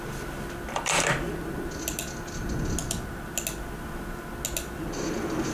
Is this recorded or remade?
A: recorded